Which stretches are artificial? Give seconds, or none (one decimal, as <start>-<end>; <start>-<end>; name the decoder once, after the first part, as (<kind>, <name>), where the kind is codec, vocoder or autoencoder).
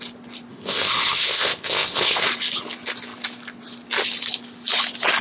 0.5-2.2 (codec, ZipCodec)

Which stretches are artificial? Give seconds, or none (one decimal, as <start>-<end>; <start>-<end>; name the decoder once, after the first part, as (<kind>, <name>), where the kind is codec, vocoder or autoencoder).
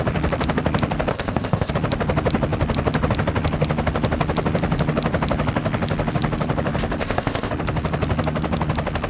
1.1-1.7 (codec, ZipCodec); 7.0-7.5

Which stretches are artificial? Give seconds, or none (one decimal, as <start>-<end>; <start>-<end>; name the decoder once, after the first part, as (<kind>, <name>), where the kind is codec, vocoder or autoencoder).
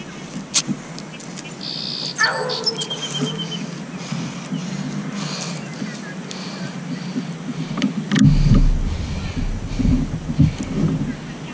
none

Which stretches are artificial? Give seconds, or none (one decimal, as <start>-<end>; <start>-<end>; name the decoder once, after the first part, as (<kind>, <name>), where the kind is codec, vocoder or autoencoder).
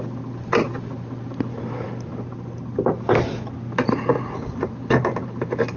none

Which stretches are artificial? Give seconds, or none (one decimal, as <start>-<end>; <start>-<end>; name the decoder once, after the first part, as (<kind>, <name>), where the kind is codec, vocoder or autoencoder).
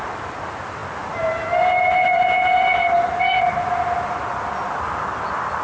none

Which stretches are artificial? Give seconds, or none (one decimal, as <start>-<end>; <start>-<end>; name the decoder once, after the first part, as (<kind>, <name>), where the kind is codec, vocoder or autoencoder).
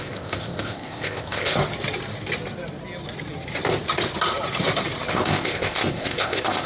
0.0-1.6 (codec, ZipCodec); 5.1-6.7